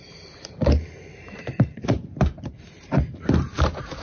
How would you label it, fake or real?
fake